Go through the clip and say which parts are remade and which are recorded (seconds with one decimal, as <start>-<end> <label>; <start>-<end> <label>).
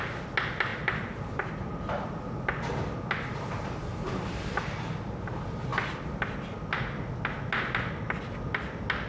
0.0-0.7 recorded; 0.7-2.2 remade; 2.2-3.9 recorded; 3.9-4.7 remade; 4.7-9.1 recorded